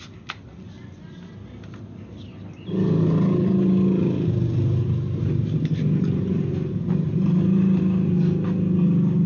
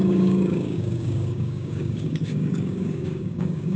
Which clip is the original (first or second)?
first